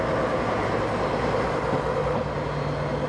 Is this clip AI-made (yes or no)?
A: no